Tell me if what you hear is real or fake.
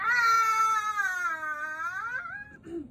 real